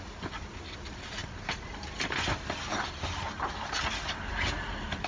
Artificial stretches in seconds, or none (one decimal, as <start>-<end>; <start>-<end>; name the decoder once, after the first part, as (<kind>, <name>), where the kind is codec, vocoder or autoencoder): none